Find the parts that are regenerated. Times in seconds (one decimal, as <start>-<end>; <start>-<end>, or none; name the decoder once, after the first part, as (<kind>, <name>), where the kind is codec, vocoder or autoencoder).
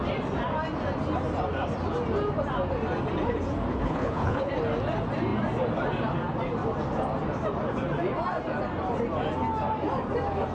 3.7-4.5 (codec, HILCodec)